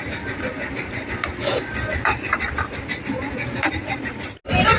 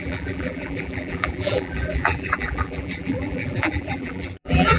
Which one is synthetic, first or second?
second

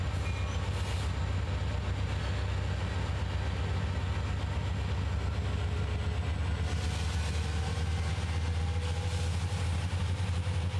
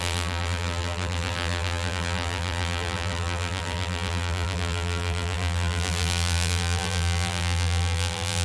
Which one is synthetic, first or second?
second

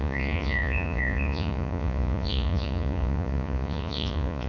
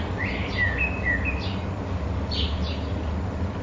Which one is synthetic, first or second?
first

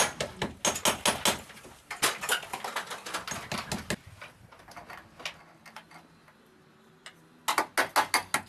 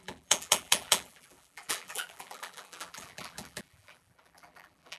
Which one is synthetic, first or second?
second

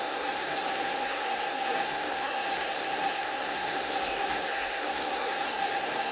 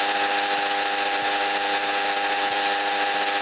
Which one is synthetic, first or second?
first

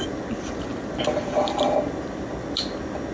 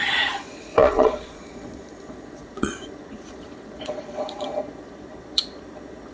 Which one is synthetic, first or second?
second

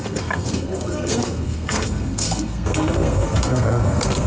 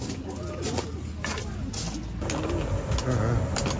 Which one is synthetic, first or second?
first